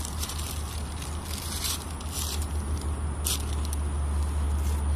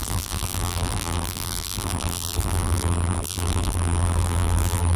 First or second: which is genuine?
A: first